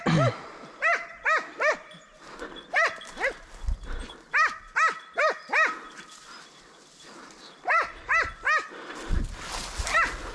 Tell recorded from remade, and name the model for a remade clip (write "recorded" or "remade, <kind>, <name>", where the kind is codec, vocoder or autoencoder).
recorded